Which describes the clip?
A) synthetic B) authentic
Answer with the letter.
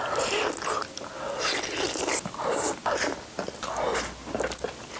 B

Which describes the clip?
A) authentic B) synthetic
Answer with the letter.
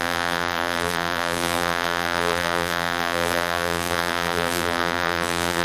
B